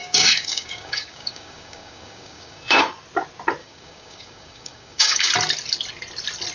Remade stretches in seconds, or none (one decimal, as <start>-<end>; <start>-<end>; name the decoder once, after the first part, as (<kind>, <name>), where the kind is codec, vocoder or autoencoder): 0.0-2.8 (codec, DAC); 3.6-5.3